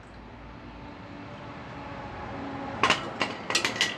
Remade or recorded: recorded